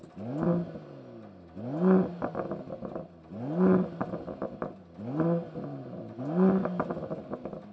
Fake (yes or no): no